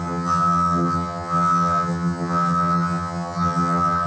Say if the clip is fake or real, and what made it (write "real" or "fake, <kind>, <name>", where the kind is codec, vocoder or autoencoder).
fake, vocoder, HiFi-GAN